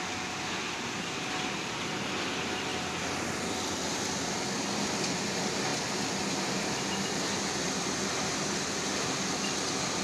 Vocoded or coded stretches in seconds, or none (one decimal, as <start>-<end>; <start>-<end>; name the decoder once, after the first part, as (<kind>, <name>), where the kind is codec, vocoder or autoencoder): none